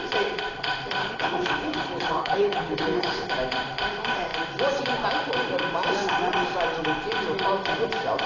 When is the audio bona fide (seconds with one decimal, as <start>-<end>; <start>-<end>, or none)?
0.0-1.0; 3.3-8.3